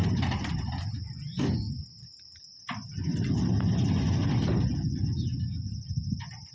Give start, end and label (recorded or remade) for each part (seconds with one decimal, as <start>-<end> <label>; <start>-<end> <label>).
0.0-1.2 remade; 1.2-6.5 recorded